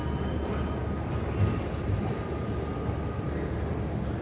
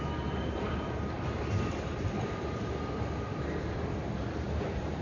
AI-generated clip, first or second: second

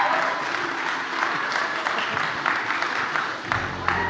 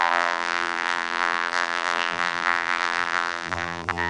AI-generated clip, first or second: second